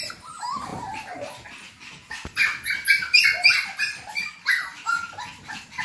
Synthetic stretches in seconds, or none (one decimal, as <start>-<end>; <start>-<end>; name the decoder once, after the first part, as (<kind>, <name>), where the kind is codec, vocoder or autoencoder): none